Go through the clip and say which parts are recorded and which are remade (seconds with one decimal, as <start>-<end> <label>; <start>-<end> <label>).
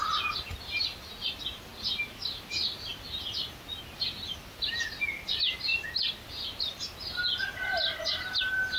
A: 0.0-8.8 recorded